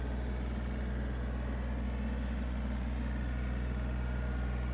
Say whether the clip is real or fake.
real